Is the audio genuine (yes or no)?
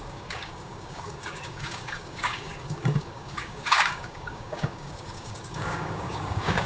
no